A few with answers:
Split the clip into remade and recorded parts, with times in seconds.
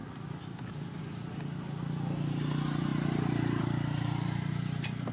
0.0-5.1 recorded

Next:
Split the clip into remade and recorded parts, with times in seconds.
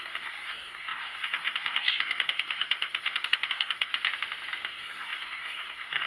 0.0-3.9 remade; 3.9-4.6 recorded; 4.6-6.1 remade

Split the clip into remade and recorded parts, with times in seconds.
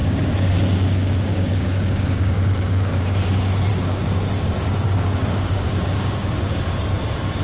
0.0-3.0 remade; 3.0-3.7 recorded; 3.7-6.7 remade; 6.7-7.4 recorded